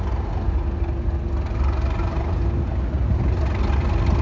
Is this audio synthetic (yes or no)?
no